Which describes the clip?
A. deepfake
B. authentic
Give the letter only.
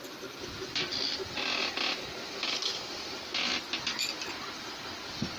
B